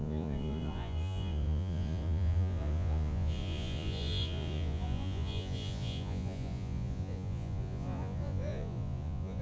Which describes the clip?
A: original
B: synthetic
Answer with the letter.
B